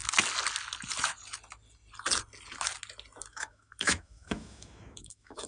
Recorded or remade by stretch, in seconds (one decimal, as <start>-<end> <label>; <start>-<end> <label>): 0.0-3.3 recorded; 3.3-5.5 remade